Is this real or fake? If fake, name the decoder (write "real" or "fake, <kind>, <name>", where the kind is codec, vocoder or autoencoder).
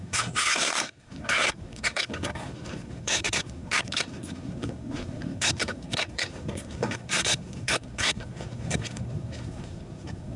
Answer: fake, codec, SNAC